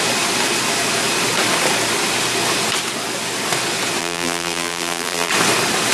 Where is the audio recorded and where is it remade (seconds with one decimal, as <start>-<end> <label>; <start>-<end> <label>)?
0.0-4.0 recorded; 4.0-5.3 remade; 5.3-5.9 recorded

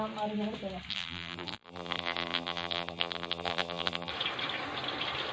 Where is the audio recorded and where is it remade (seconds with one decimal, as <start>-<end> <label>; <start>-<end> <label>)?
0.0-0.9 recorded; 0.9-4.1 remade; 4.1-5.3 recorded

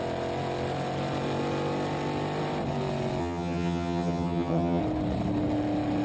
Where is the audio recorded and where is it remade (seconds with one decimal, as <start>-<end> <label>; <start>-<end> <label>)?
0.0-3.2 recorded; 3.2-4.8 remade; 4.8-6.0 recorded

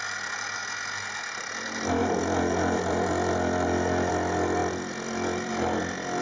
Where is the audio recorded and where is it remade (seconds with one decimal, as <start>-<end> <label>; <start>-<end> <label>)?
0.0-2.0 recorded; 2.0-4.1 remade; 4.1-4.6 recorded; 4.6-5.5 remade; 5.5-6.2 recorded

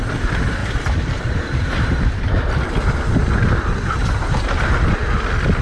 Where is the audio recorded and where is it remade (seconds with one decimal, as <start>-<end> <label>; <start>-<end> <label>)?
0.0-0.6 recorded; 0.6-2.5 remade; 2.5-5.6 recorded

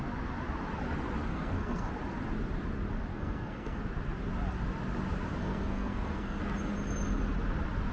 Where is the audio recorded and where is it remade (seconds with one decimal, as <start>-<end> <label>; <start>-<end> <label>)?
0.0-1.3 recorded; 1.3-1.9 remade; 1.9-3.1 recorded; 3.1-3.8 remade; 3.8-5.4 recorded; 5.4-6.4 remade; 6.4-7.9 recorded